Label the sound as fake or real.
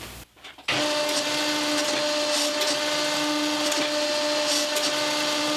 real